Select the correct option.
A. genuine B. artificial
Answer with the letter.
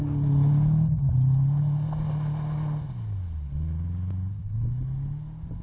A